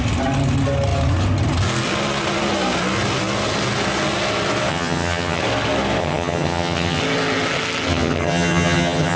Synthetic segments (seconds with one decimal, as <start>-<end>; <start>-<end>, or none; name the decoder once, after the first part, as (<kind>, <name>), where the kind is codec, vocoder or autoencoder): 4.7-5.4 (vocoder, HiFi-GAN); 6.0-7.0; 7.9-9.2

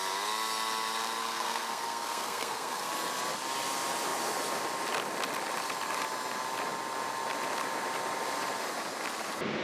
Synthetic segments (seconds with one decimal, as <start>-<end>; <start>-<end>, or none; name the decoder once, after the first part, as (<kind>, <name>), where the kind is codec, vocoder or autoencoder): 1.2-2.9 (codec, SNAC)

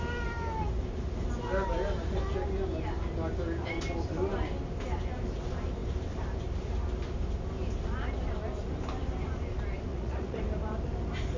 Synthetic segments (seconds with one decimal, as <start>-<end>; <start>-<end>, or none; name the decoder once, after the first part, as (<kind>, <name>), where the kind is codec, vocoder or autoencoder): 9.9-10.4 (vocoder, Vocos)

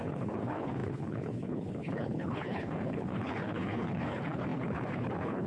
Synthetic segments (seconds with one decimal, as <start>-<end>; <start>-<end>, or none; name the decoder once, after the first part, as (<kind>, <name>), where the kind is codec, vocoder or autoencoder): 0.0-5.5 (codec, HILCodec)

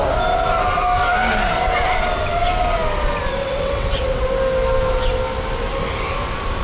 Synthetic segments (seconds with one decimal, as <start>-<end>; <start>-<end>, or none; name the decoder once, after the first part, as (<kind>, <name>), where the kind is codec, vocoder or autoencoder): 3.4-4.2 (vocoder, WaveNeXt)

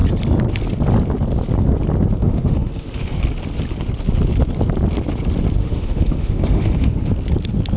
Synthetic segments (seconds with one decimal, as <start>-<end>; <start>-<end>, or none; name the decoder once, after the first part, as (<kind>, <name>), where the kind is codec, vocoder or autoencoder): 2.2-3.2 (autoencoder, DAC-VAE); 5.6-7.1

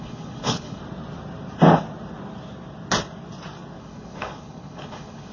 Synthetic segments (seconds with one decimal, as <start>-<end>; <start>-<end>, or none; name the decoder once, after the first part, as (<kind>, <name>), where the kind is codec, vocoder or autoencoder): 0.0-0.8 (codec, HILCodec); 3.8-5.3

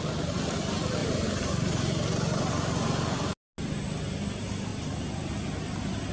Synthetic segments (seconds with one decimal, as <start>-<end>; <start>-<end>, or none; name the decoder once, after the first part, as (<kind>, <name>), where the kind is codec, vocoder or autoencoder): 1.0-2.5 (vocoder, BigVGAN v2); 4.7-6.1